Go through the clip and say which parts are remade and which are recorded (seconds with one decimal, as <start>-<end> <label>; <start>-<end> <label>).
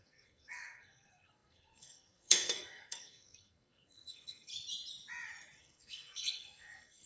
0.0-4.5 remade; 4.5-5.6 recorded; 5.6-7.1 remade